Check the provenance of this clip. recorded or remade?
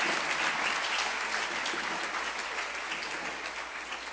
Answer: recorded